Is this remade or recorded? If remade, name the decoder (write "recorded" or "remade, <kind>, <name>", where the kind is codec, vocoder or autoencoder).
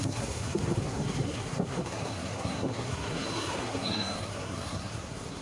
remade, codec, SNAC